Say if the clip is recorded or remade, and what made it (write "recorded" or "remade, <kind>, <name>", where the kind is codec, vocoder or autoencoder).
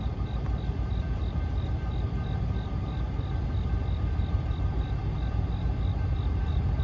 recorded